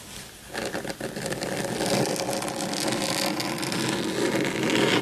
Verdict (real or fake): real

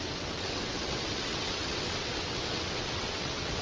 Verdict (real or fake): fake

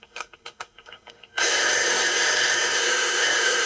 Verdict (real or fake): fake